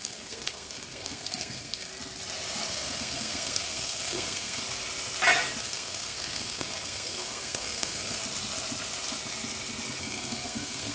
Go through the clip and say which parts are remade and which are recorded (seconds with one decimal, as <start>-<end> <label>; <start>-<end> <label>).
0.0-1.9 remade; 1.9-2.7 recorded; 2.7-4.6 remade; 4.6-5.6 recorded; 5.6-8.2 remade; 8.2-10.0 recorded; 10.0-10.9 remade